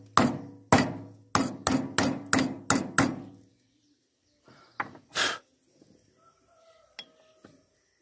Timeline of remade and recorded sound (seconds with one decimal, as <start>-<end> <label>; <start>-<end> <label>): 0.0-8.0 recorded